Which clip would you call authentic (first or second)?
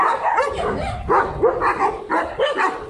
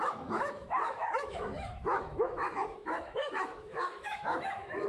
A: first